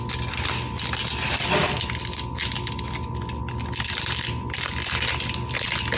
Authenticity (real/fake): real